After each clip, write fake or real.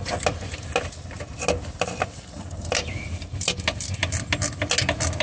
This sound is real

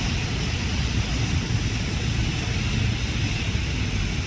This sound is real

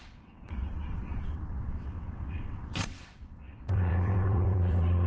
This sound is fake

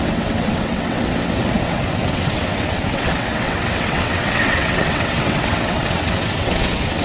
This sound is fake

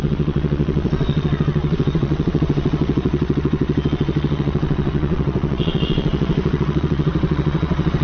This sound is fake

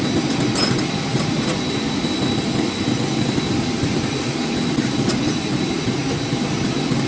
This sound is real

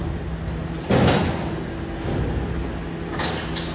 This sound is real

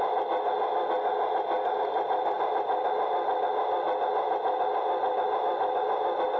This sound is real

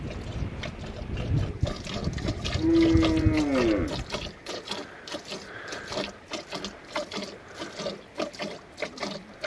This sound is real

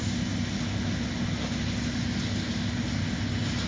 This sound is real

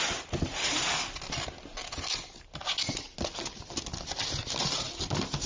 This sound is real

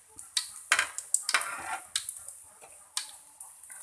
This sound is real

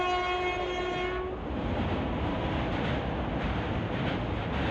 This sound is real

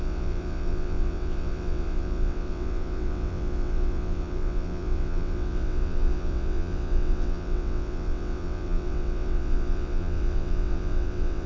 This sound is fake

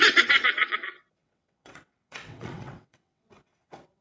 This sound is fake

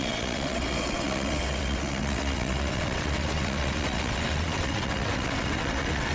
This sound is fake